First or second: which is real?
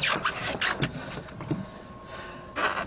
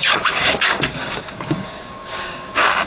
first